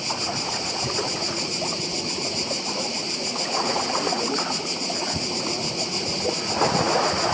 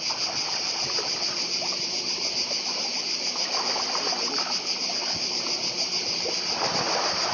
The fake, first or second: first